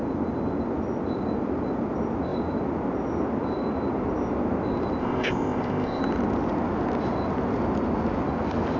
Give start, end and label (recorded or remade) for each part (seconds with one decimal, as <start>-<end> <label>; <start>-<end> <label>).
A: 0.0-5.0 recorded; 5.0-6.0 remade; 6.0-8.8 recorded